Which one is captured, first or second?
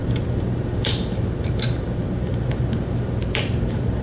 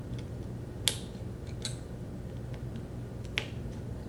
second